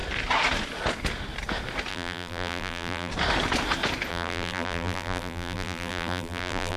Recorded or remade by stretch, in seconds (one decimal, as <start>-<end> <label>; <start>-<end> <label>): 0.0-1.9 recorded; 1.9-3.1 remade; 3.1-4.1 recorded; 4.1-6.8 remade